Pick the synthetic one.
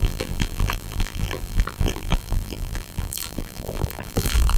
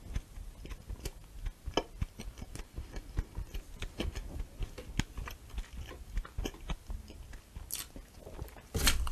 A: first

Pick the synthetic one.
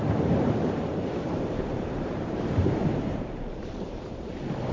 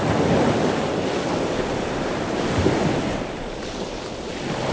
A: first